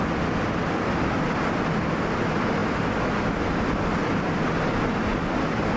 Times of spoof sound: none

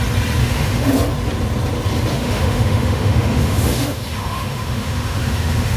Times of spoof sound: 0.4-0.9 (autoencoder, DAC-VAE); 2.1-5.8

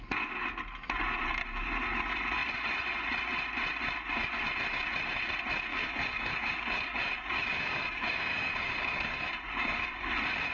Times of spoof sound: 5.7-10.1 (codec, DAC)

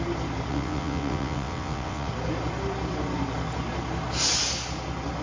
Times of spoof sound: 0.5-2.1 (vocoder, WaveNeXt)